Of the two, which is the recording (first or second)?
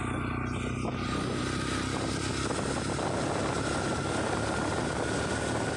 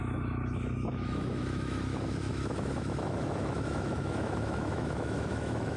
first